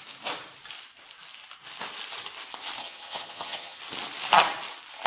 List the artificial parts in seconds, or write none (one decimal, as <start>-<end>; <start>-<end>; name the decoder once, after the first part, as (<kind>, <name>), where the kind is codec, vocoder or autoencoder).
2.8-3.8 (vocoder, HiFi-GAN)